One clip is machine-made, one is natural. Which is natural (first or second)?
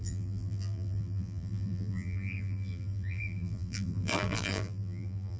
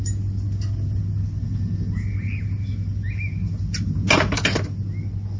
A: second